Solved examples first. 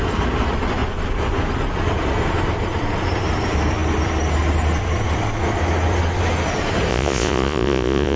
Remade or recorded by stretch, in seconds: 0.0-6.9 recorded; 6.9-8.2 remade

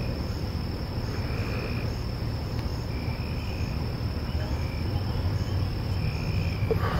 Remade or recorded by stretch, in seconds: 0.0-7.0 recorded

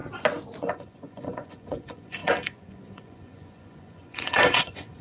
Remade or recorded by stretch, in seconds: 0.0-0.6 recorded; 0.6-5.0 remade

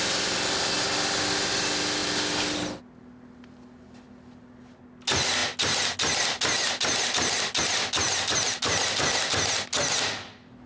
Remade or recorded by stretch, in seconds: 0.0-10.7 recorded

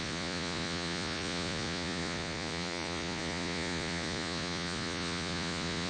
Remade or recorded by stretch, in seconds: 0.0-5.9 remade

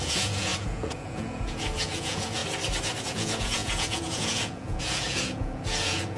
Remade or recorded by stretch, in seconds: 0.0-2.4 remade; 2.4-3.0 recorded; 3.0-6.2 remade